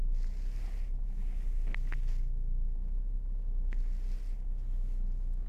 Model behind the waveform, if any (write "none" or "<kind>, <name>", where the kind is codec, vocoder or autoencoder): none